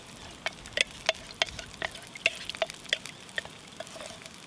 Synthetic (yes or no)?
no